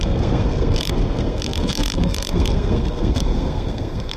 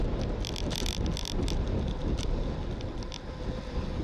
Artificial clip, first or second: first